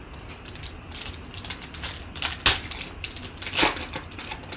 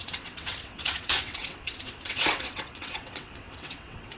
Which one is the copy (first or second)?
second